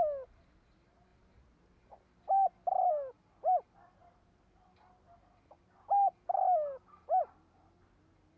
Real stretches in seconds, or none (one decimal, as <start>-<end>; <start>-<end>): 0.0-8.4